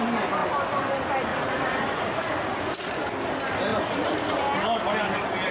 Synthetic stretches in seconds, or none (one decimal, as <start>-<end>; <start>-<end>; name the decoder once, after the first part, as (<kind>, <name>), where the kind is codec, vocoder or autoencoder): 1.3-2.9 (vocoder, Vocos); 3.7-4.4